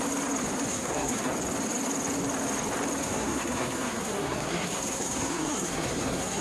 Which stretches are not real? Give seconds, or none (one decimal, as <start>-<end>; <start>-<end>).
0.7-1.3; 3.0-6.4